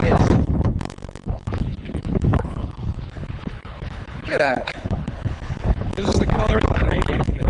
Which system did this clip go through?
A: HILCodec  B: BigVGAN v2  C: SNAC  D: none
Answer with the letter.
A